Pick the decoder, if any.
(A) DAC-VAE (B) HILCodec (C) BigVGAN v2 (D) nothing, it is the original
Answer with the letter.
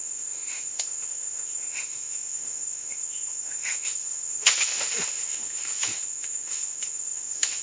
A